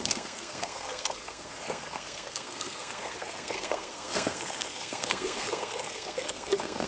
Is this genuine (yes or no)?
no